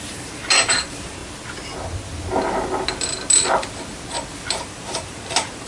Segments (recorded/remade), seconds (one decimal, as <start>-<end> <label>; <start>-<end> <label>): 0.0-1.2 remade; 1.2-4.6 recorded; 4.6-5.7 remade